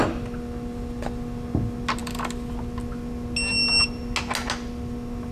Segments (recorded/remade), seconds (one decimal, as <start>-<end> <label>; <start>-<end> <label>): 0.0-5.3 recorded